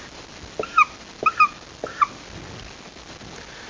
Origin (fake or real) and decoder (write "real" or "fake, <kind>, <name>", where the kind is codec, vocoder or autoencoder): real